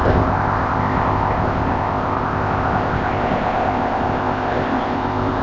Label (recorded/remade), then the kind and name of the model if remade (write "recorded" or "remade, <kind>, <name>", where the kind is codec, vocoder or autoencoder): remade, codec, ZipCodec